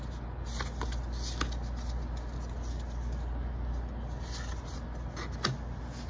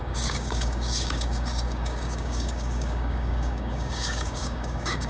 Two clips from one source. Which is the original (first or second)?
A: first